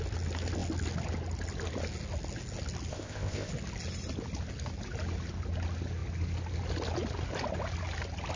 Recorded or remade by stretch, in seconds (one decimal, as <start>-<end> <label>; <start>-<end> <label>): 0.0-2.9 recorded; 2.9-3.5 remade; 3.5-8.4 recorded